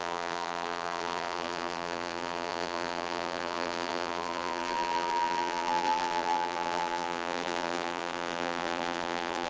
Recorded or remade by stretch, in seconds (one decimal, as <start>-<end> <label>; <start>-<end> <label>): 0.0-9.5 remade